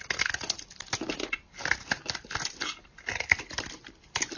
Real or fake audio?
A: real